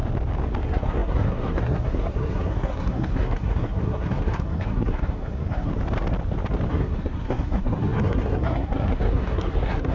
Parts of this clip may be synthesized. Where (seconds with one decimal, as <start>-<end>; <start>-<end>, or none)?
0.6-5.7; 6.7-9.9